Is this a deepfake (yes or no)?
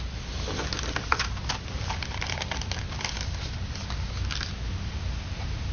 no